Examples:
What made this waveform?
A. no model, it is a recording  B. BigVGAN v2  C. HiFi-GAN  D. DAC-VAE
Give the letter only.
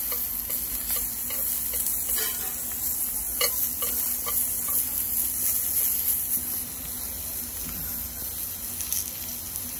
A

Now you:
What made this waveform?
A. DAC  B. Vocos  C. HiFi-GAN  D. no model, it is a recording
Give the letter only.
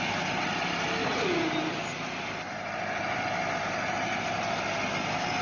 D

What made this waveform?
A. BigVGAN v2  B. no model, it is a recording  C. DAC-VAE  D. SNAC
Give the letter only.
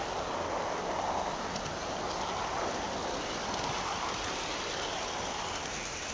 B